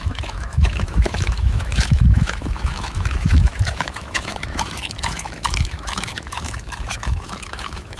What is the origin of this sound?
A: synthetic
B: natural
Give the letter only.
A